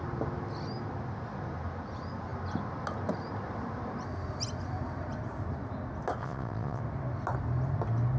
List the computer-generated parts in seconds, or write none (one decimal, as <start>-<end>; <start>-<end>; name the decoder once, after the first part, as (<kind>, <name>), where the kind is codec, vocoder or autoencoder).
6.2-6.8 (vocoder, Vocos)